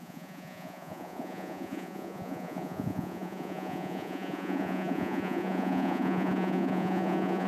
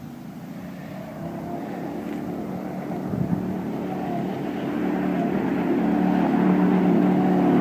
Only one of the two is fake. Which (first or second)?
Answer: first